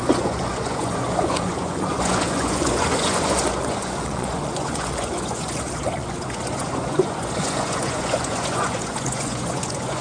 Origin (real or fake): fake